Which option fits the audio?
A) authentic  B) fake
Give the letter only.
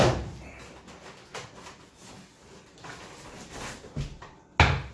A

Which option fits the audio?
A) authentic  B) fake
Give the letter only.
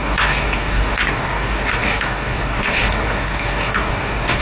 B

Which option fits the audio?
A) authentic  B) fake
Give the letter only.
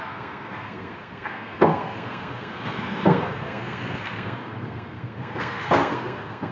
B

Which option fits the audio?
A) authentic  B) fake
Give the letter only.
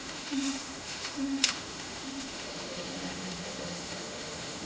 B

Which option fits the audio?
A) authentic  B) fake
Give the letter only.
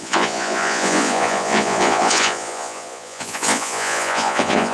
B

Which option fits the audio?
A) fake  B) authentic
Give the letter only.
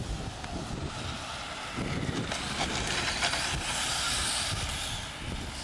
B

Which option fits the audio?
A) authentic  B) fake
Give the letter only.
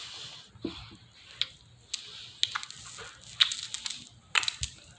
A